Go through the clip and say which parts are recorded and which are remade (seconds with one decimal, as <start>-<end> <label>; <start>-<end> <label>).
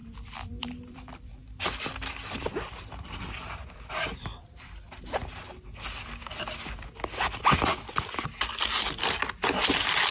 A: 0.0-1.4 remade; 1.4-2.4 recorded; 2.4-4.3 remade; 4.3-8.8 recorded; 8.8-10.1 remade